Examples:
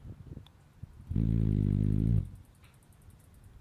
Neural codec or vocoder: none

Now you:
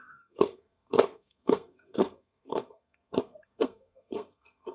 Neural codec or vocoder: codec, SNAC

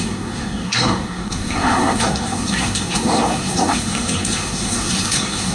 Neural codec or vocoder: codec, SNAC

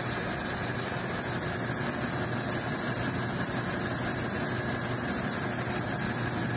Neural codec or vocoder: none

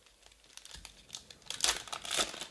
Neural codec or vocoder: none